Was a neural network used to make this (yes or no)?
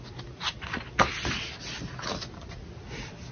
no